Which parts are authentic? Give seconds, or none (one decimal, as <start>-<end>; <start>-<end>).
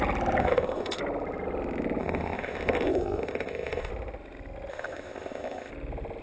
0.0-0.4; 1.0-2.0; 3.9-4.7; 5.7-6.2